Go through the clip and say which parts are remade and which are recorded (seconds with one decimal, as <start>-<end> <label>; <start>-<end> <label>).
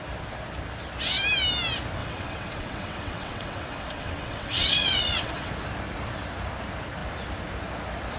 0.0-2.0 recorded; 2.0-5.5 remade; 5.5-8.2 recorded